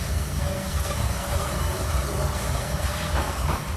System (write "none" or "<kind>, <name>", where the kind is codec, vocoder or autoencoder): codec, SNAC